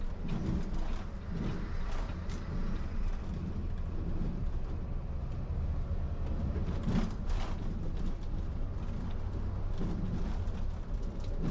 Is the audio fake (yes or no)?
no